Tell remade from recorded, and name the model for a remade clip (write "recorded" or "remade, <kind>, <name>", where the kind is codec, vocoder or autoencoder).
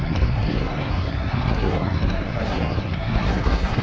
remade, codec, SNAC